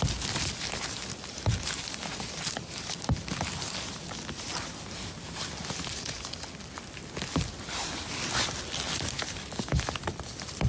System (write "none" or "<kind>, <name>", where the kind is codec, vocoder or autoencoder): none